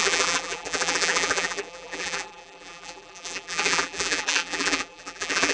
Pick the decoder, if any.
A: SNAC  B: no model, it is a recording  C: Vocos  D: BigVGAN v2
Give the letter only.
D